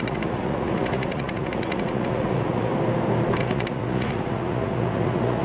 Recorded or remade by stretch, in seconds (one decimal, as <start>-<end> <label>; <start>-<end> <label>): 0.0-2.7 remade; 2.7-3.4 recorded; 3.4-5.4 remade